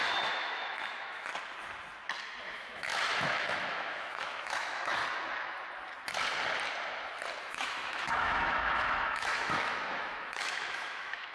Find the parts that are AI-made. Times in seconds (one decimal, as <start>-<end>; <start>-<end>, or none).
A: 0.0-1.3; 2.5-5.0; 7.4-11.3